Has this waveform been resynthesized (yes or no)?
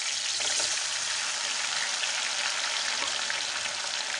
no